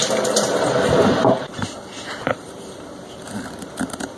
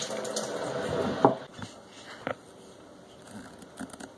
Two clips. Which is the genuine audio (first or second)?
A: second